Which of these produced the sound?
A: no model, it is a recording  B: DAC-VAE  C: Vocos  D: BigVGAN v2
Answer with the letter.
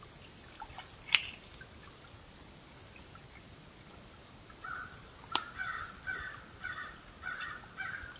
A